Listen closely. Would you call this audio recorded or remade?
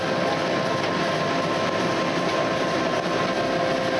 recorded